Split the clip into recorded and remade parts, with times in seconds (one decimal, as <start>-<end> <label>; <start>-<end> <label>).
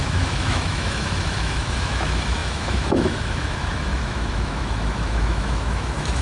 0.0-6.2 remade